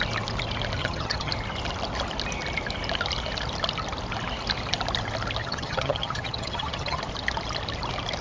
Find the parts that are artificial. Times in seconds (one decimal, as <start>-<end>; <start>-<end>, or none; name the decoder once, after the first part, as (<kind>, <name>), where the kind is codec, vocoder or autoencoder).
0.8-1.3 (vocoder, HiFi-GAN); 5.4-7.0